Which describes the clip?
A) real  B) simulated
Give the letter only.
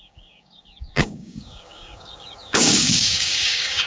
B